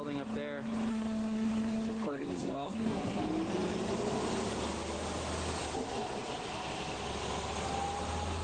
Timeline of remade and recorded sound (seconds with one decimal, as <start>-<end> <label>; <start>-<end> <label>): 0.0-0.9 recorded; 0.9-3.2 remade; 3.2-8.4 recorded